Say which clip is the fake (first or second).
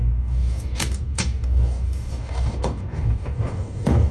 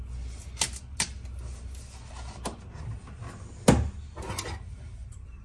first